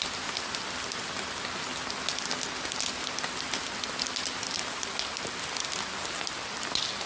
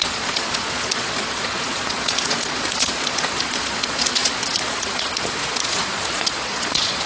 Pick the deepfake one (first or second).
second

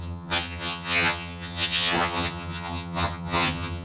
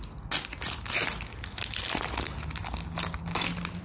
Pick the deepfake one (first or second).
first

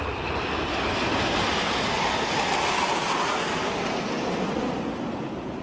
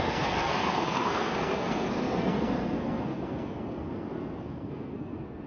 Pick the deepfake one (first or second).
second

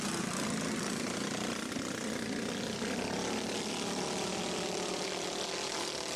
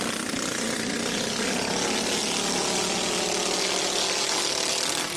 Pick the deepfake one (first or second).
first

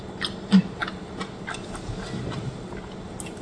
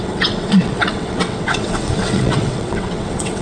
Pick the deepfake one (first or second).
second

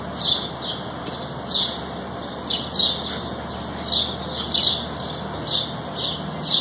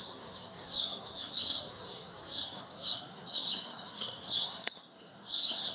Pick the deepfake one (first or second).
second